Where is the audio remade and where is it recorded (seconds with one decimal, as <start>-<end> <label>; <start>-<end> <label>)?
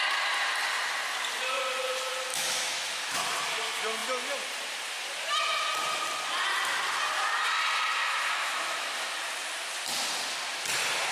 0.0-2.3 recorded; 2.3-3.2 remade; 3.2-8.0 recorded; 8.0-8.9 remade; 8.9-11.1 recorded